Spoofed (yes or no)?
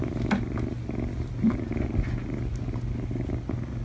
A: no